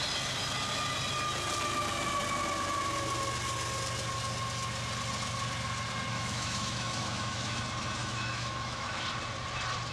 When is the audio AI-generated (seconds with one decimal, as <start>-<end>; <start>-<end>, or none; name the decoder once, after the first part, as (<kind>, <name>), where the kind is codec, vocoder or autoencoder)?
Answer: 6.1-7.6 (autoencoder, DAC-VAE); 8.0-9.0